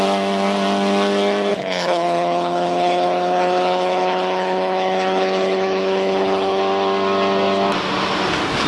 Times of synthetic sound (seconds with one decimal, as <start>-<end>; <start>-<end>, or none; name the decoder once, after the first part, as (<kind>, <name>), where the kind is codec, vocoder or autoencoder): 1.5-6.6 (codec, HILCodec)